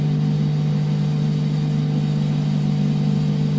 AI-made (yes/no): no